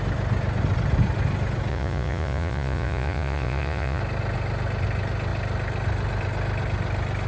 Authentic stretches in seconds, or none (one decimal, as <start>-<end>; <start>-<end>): 0.0-1.7; 4.0-7.3